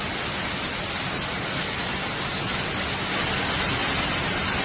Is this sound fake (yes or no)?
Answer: no